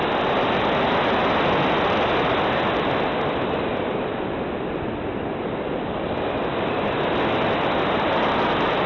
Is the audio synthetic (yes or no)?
no